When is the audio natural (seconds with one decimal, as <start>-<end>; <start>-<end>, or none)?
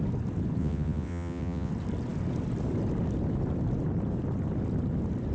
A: 0.0-0.6; 1.7-5.3